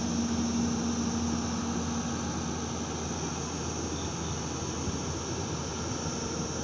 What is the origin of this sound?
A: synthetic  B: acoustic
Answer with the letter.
B